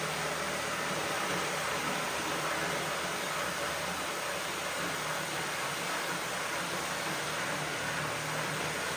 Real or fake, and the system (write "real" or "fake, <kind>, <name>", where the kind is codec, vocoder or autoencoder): real